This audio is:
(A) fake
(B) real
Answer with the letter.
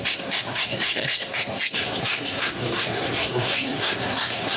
A